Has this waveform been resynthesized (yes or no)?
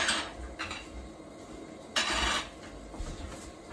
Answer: no